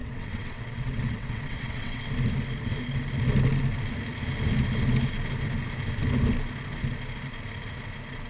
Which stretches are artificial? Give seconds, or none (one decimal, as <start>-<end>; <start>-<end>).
0.0-2.1

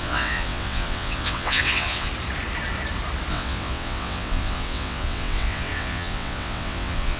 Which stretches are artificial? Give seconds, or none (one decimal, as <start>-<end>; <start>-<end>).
0.0-2.1; 3.3-7.2